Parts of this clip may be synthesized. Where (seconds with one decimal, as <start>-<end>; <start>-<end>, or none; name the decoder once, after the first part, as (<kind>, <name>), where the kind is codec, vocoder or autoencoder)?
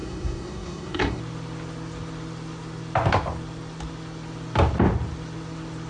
0.0-1.2 (codec, SNAC)